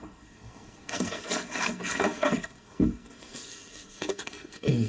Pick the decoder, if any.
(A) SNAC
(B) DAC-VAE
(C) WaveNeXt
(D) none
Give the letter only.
A